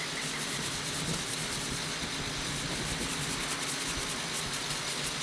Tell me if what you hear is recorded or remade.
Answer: recorded